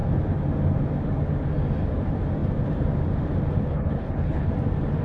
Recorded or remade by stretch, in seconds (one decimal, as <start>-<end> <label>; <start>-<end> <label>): 0.0-3.7 recorded; 3.7-4.5 remade; 4.5-5.0 recorded